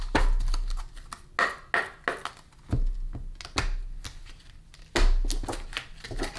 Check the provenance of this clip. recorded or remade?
recorded